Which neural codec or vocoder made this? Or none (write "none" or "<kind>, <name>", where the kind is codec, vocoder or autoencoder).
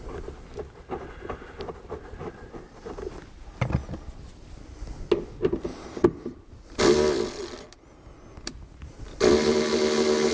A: none